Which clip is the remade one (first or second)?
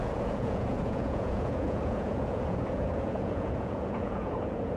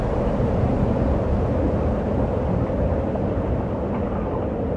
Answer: first